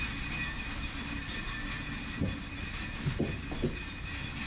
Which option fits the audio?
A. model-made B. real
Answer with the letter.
B